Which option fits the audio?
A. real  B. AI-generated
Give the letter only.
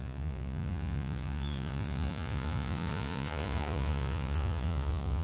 B